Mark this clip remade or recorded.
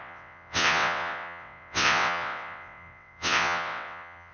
remade